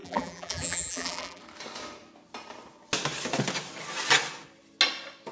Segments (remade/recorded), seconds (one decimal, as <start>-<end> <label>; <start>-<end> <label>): 0.0-1.4 remade; 1.4-5.3 recorded